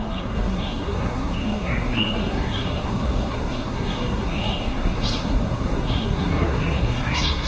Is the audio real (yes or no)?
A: no